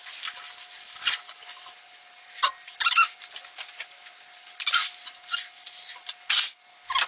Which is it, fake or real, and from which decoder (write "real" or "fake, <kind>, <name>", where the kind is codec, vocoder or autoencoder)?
real